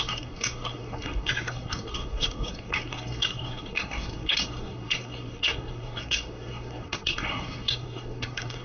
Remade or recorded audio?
remade